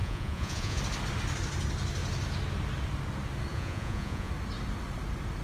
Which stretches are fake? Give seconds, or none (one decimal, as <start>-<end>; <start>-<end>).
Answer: 0.0-0.8; 3.5-4.3